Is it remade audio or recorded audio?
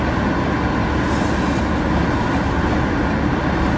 recorded